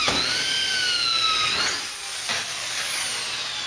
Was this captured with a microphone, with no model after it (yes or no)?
yes